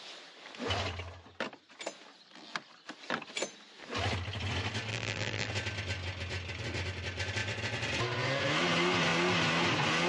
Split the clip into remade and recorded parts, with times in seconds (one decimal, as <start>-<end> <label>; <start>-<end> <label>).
0.0-4.9 recorded; 4.9-5.5 remade; 5.5-10.1 recorded